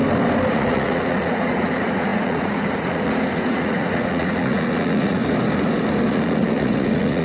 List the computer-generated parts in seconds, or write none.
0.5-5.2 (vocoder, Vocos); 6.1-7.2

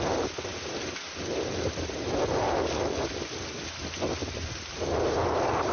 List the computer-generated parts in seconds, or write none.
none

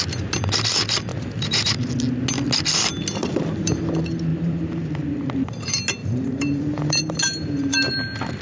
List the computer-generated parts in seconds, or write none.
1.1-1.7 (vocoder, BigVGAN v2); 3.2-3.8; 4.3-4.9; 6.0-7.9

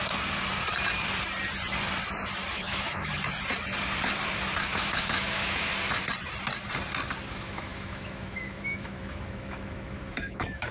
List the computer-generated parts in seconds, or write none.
2.5-3.1 (autoencoder, DAC-VAE); 4.6-5.7; 7.3-10.7

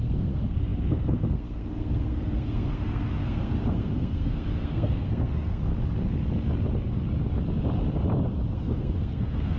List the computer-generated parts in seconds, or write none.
0.0-5.7 (codec, SNAC); 8.5-9.6

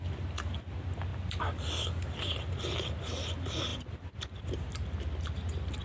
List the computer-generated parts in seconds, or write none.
none